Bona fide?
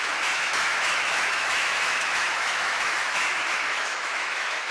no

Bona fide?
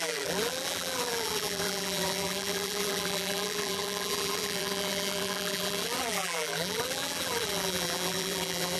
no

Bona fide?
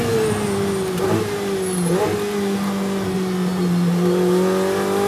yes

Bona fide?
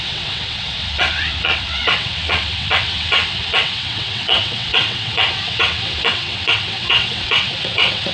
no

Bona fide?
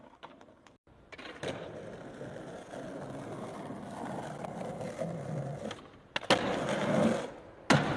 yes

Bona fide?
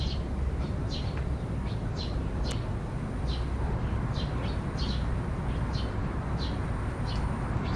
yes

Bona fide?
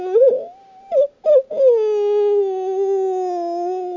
yes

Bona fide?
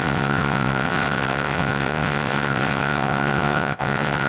no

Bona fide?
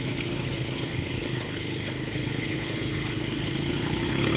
no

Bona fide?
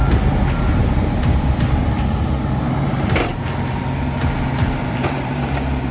no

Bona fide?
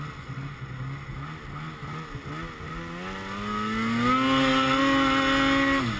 yes